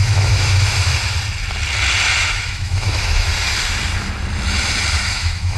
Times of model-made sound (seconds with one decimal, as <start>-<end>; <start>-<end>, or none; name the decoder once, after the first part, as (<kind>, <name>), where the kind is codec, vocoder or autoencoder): 0.0-0.9 (autoencoder, DAC-VAE); 2.3-3.3; 5.1-5.6